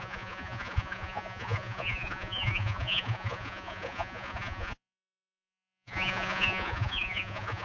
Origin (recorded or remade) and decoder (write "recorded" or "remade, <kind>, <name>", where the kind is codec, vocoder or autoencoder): remade, vocoder, Vocos